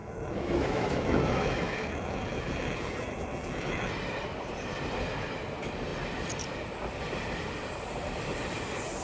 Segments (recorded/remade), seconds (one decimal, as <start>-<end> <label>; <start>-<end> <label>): 0.0-3.9 remade; 3.9-9.0 recorded